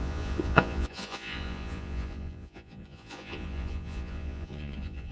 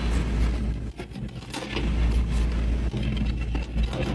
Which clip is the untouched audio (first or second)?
second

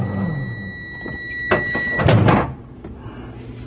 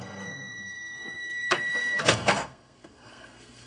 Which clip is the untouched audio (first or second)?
first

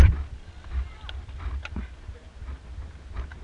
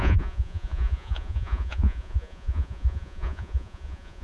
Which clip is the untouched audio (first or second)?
first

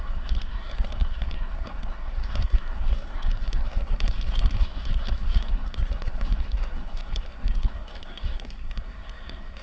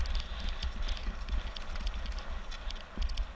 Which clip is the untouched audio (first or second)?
second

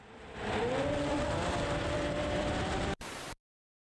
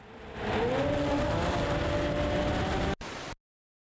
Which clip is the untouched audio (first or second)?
second